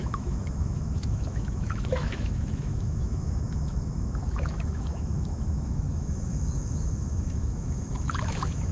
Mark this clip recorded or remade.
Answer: remade